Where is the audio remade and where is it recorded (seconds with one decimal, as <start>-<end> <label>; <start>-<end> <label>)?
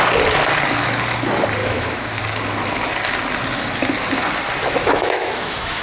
0.0-1.6 recorded; 1.6-2.1 remade; 2.1-4.8 recorded; 4.8-5.8 remade